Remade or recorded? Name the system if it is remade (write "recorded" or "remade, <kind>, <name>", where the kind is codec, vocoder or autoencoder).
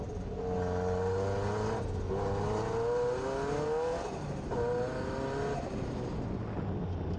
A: recorded